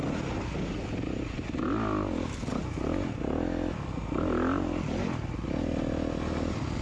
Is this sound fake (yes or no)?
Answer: no